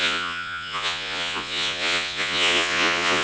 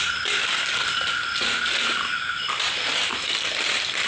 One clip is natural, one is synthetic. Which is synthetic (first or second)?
first